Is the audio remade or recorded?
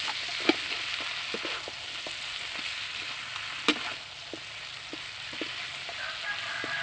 recorded